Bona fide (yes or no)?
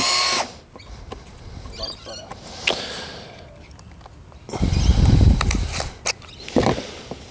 yes